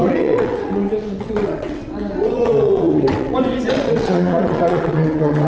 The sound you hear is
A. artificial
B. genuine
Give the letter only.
A